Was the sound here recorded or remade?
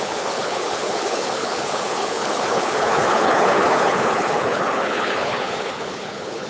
remade